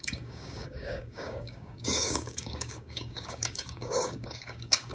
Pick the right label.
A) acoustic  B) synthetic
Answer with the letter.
B